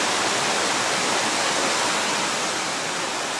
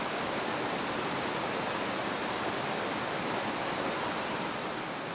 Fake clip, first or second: second